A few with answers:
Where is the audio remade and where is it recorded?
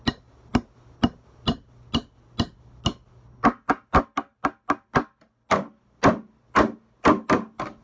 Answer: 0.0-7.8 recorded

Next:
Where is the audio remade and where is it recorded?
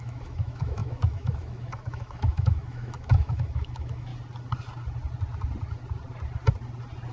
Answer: 0.0-4.1 remade; 4.1-7.1 recorded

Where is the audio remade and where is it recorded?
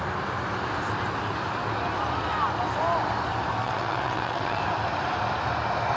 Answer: 0.0-3.6 recorded; 3.6-4.6 remade; 4.6-6.0 recorded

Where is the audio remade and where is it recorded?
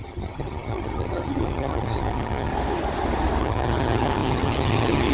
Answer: 0.0-2.5 remade; 2.5-3.4 recorded; 3.4-5.1 remade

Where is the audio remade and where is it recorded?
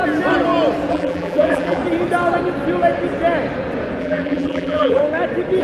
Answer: 0.0-0.9 recorded; 0.9-1.8 remade; 1.8-4.0 recorded; 4.0-5.0 remade; 5.0-5.6 recorded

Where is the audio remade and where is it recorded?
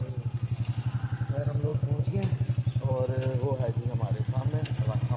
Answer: 0.0-5.2 recorded